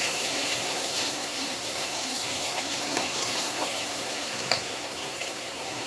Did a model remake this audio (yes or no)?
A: yes